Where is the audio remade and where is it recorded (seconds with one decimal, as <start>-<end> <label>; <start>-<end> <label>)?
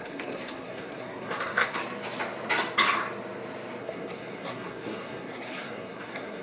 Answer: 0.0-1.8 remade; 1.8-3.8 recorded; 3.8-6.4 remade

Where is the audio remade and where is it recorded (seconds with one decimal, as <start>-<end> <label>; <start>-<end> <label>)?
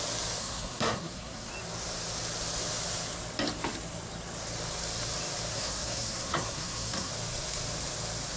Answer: 0.0-0.4 recorded; 0.4-1.5 remade; 1.5-5.5 recorded; 5.5-7.1 remade; 7.1-8.4 recorded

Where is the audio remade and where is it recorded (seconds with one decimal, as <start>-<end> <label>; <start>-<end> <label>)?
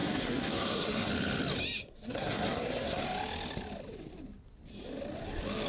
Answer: 0.0-1.1 remade; 1.1-1.8 recorded; 1.8-3.0 remade; 3.0-5.7 recorded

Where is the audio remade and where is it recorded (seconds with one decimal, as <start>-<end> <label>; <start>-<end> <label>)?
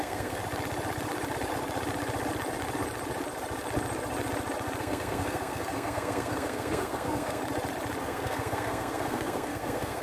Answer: 0.0-0.4 remade; 0.4-4.8 recorded; 4.8-7.4 remade; 7.4-8.0 recorded; 8.0-10.0 remade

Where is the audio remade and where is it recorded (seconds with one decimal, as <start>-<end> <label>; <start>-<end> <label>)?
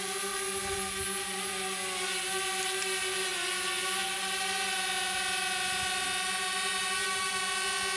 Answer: 0.0-8.0 recorded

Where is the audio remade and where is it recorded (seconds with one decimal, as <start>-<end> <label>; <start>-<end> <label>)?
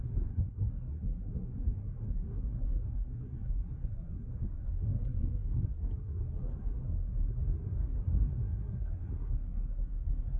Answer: 0.0-10.4 remade